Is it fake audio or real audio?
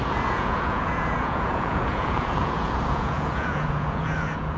fake